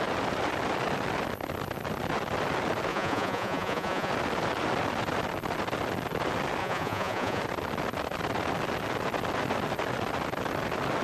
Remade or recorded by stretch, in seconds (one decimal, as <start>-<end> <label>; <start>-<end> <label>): 0.0-2.9 recorded; 2.9-4.1 remade; 4.1-6.6 recorded; 6.6-7.4 remade; 7.4-11.0 recorded

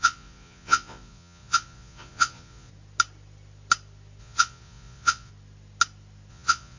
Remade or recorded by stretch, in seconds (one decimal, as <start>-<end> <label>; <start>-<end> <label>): 0.0-2.7 remade; 2.7-4.2 recorded; 4.2-5.3 remade; 5.3-6.3 recorded; 6.3-6.8 remade